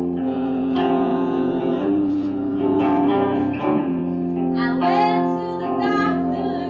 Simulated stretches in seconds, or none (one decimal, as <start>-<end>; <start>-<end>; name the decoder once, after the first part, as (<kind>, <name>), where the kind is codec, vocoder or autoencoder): 0.0-4.0 (vocoder, Vocos); 5.6-6.7